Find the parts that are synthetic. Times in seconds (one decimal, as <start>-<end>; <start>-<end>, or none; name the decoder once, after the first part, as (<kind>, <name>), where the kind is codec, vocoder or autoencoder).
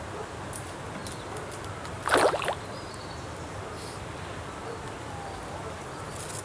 none